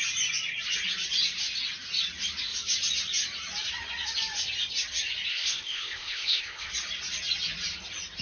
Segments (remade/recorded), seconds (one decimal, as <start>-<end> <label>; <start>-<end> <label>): 0.0-5.3 recorded; 5.3-6.7 remade; 6.7-8.2 recorded